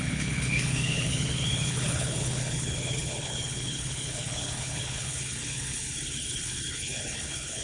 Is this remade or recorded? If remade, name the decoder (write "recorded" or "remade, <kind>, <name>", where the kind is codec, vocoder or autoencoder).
remade, codec, HILCodec